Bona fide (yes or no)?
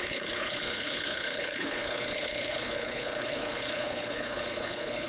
no